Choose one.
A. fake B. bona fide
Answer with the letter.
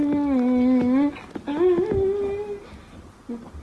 B